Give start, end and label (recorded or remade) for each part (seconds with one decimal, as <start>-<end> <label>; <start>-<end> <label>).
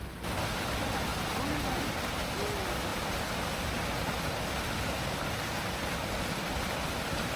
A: 0.0-7.4 recorded